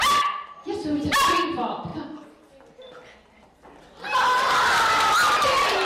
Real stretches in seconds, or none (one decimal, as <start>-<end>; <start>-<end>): 0.0-5.8